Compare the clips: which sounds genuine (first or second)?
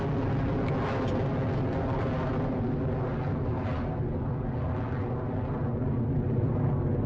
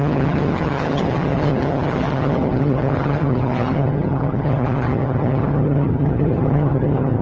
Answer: first